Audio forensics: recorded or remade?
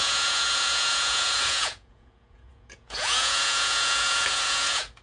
remade